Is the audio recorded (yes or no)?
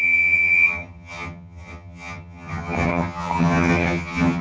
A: no